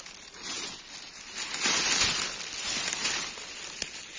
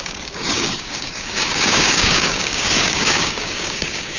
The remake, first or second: second